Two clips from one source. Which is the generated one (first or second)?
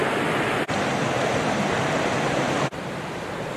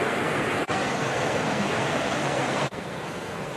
second